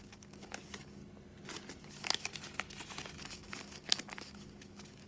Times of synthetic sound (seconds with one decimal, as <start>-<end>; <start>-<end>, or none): 0.0-1.0; 1.8-2.3; 3.2-5.1